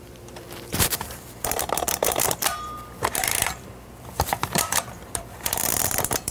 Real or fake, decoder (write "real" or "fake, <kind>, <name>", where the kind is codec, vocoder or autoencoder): fake, vocoder, BigVGAN v2